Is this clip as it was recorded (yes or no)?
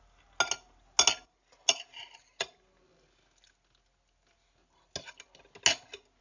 yes